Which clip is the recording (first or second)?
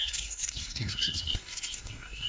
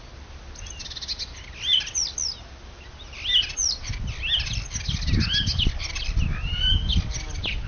second